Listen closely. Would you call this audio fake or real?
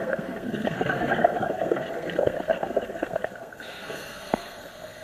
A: fake